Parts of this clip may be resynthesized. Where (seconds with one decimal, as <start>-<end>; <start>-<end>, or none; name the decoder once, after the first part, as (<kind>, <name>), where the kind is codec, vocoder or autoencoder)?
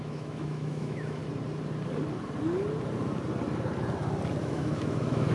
0.0-1.2 (autoencoder, DAC-VAE); 4.4-5.3